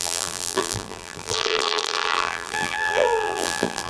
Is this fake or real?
fake